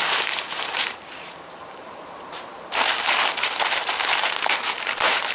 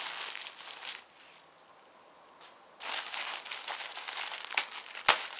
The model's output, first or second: first